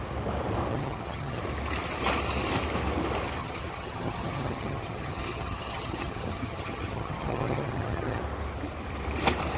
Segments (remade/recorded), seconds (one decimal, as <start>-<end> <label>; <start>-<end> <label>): 0.0-0.7 recorded; 0.7-1.4 remade; 1.4-3.4 recorded; 3.4-8.2 remade; 8.2-9.6 recorded